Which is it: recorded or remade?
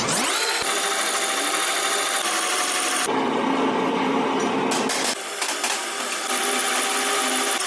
recorded